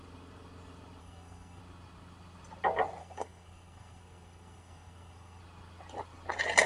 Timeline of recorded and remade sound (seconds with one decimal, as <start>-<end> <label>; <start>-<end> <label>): 0.0-1.0 recorded; 1.0-1.6 remade; 1.6-3.0 recorded; 3.0-5.4 remade; 5.4-6.7 recorded